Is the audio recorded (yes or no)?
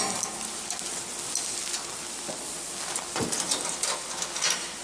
yes